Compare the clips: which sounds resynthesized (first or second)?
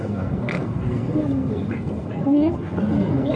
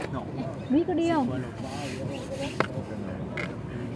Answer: first